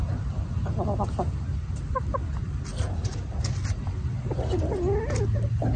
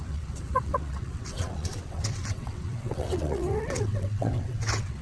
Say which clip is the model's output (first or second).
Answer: second